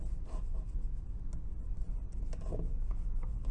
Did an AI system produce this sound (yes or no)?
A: no